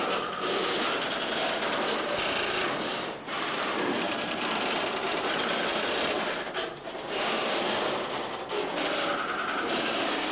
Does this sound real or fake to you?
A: real